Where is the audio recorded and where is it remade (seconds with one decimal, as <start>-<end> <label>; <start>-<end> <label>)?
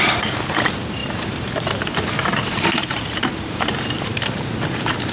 0.0-1.0 recorded; 1.0-4.1 remade; 4.1-5.1 recorded